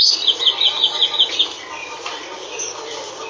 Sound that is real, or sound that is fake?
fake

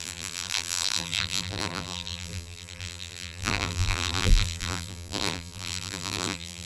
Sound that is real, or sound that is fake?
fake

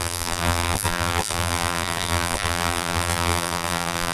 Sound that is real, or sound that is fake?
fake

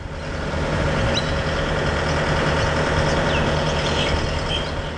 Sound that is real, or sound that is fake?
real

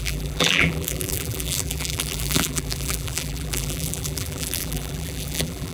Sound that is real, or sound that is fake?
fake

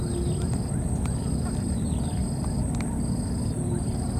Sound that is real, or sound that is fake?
real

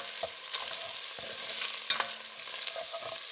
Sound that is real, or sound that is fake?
real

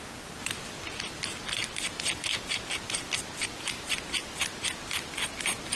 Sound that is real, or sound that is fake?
fake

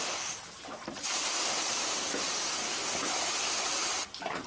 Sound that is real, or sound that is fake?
fake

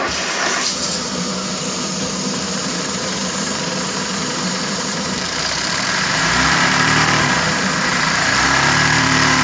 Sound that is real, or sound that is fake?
fake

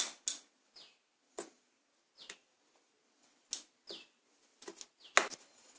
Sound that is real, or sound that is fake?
real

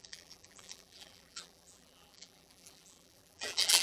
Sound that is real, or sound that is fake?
fake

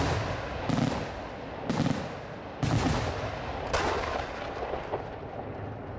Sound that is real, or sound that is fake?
real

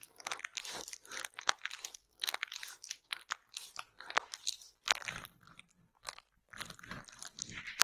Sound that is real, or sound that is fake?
fake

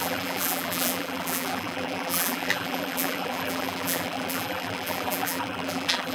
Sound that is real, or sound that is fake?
fake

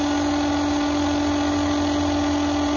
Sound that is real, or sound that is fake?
real